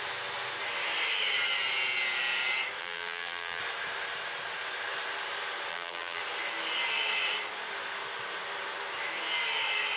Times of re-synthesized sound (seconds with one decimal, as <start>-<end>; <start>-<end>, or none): 2.8-3.6; 5.7-6.2